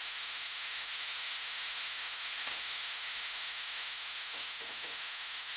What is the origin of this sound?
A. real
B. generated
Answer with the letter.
B